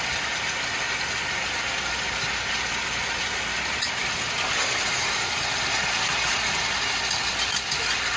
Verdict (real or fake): real